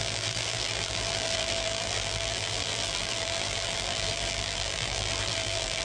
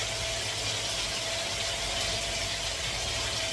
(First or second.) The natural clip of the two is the second